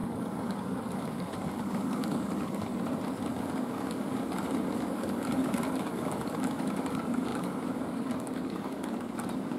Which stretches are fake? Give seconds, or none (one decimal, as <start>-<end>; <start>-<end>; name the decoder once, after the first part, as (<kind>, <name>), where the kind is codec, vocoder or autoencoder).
0.0-2.7 (codec, DAC); 3.3-9.6